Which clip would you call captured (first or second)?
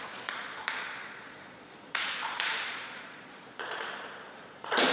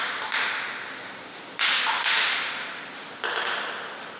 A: second